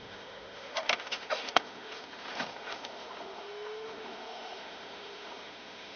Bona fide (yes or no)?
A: no